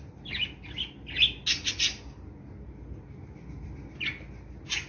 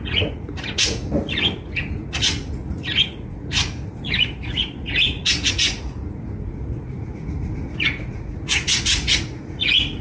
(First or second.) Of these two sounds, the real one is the first